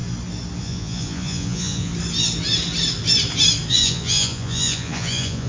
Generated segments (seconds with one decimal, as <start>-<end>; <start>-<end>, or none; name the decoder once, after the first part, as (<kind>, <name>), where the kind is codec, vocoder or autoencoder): 0.6-1.9 (vocoder, Vocos); 3.7-5.5